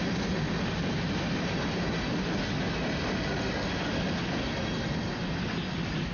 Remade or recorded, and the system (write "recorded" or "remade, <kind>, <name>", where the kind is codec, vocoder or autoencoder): recorded